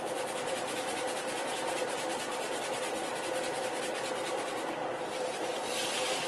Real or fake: fake